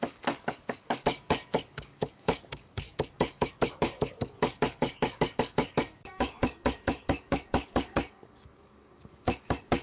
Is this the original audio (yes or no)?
no